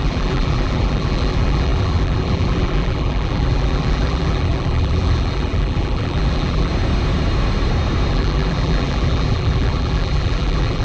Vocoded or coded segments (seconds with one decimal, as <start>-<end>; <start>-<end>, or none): 0.0-6.7; 8.1-10.8